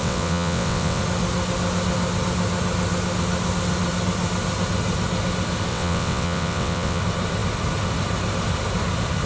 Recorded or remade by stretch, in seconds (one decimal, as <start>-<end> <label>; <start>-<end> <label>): 0.0-1.0 remade; 1.0-5.7 recorded; 5.7-7.0 remade; 7.0-9.3 recorded